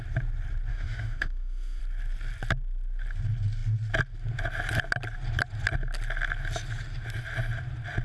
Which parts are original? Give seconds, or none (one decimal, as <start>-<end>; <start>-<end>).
0.0-0.7; 1.8-8.0